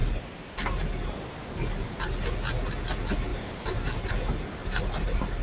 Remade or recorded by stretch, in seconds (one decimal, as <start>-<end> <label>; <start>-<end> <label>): 0.0-3.3 recorded; 3.3-4.1 remade; 4.1-4.6 recorded; 4.6-5.4 remade

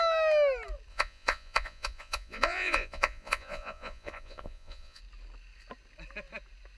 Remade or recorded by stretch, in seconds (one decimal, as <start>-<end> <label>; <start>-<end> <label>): 0.0-0.9 recorded; 0.9-5.0 remade; 5.0-6.8 recorded

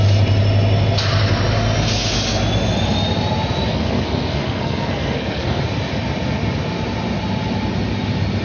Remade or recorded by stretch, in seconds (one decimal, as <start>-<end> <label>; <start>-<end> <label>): 0.0-3.7 recorded; 3.7-5.6 remade; 5.6-8.4 recorded

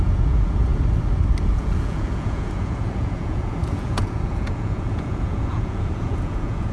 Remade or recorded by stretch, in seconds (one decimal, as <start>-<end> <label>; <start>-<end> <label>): 0.0-0.7 remade; 0.7-1.4 recorded; 1.4-6.7 remade